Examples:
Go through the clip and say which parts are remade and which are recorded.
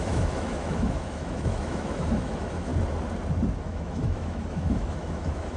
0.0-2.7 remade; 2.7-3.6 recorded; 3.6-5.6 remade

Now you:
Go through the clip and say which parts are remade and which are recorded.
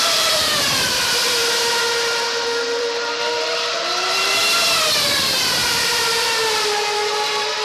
0.0-1.4 remade; 1.4-2.8 recorded; 2.8-4.4 remade; 4.4-5.0 recorded; 5.0-7.6 remade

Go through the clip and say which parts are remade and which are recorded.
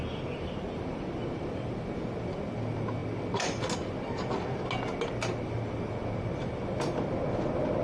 0.0-7.8 recorded